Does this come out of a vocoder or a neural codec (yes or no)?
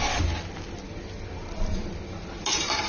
no